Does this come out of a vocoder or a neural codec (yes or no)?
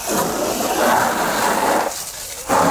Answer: yes